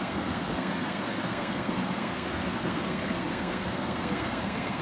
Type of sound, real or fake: fake